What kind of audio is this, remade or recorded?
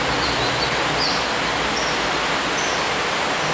recorded